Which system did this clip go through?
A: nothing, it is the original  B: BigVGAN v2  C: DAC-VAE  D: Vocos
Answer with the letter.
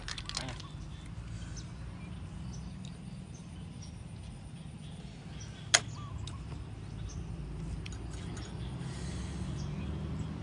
A